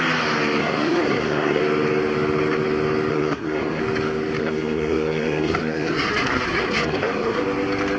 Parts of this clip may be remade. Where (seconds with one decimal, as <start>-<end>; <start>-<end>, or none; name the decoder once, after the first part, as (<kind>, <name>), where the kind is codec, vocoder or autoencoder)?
0.6-1.6 (codec, SNAC); 3.1-3.8; 4.4-7.4